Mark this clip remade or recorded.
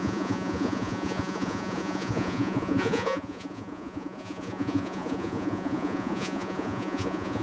remade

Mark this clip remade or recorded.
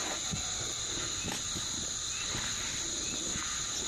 recorded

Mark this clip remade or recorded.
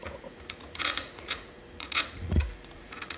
remade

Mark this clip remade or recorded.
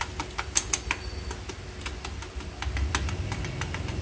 recorded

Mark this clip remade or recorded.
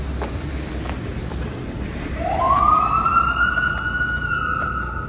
recorded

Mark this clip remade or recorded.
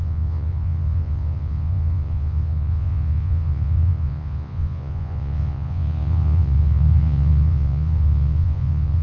remade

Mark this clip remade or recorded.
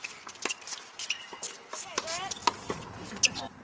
recorded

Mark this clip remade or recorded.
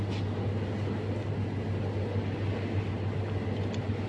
recorded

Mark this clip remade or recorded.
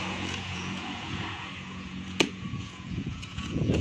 remade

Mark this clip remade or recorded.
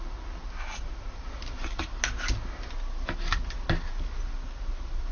recorded